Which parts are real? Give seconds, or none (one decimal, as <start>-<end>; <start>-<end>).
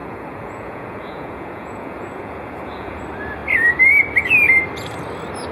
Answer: 3.0-5.5